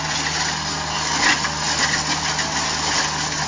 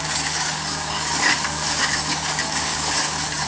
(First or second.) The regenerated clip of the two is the second